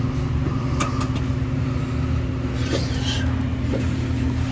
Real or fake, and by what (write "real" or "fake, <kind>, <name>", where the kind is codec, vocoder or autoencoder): real